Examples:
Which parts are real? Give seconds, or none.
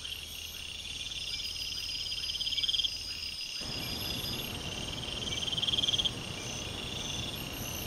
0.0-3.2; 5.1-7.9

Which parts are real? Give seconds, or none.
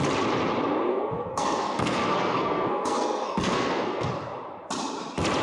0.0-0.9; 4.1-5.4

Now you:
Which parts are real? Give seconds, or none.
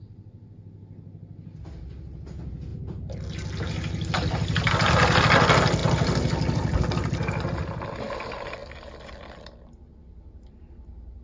0.0-11.2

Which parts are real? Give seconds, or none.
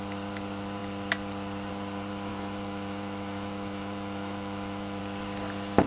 0.0-2.3; 5.0-5.9